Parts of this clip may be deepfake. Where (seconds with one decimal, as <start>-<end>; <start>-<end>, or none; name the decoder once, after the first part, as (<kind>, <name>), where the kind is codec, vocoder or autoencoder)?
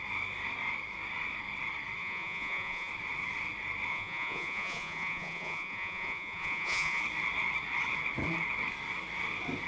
2.0-2.9 (vocoder, Vocos); 3.9-7.0